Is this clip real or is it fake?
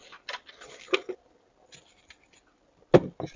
real